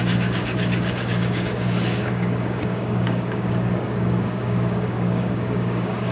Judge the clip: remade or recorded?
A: remade